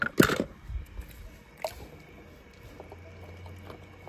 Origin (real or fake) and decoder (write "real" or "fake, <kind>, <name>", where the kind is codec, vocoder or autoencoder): real